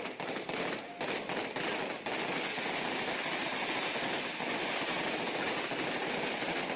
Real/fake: real